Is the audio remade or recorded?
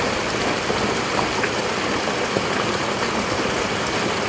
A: recorded